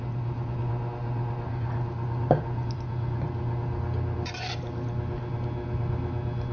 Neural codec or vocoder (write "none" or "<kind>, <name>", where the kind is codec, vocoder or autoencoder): none